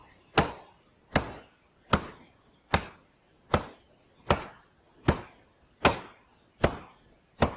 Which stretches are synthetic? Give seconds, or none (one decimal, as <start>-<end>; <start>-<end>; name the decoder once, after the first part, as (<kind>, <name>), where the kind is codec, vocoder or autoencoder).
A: none